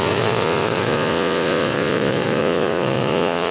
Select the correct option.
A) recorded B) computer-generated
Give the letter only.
B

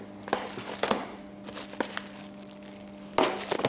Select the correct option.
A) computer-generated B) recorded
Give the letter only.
B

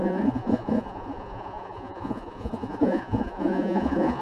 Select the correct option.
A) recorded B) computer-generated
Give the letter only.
B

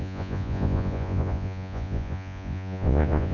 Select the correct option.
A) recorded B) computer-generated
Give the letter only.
B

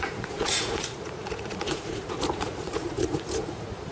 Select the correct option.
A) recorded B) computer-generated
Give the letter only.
B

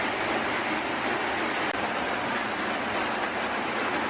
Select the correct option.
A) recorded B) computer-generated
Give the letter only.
A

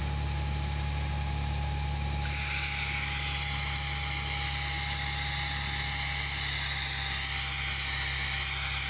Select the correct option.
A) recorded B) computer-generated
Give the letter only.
A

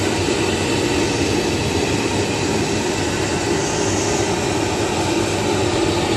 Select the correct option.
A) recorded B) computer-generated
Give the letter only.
A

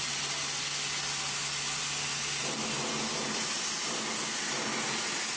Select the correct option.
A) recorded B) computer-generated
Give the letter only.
A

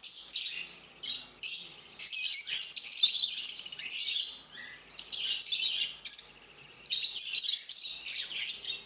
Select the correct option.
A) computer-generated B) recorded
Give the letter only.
B